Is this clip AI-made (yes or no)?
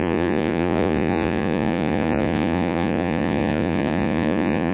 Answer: yes